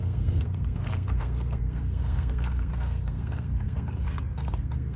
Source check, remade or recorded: remade